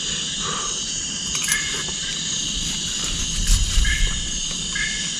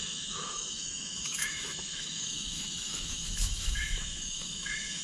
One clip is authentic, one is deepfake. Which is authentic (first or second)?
first